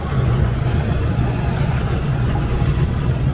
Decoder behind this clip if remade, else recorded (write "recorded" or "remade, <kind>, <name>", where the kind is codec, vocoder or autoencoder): remade, vocoder, Vocos